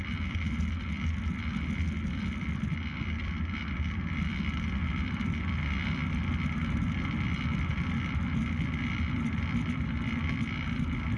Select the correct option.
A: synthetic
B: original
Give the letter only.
B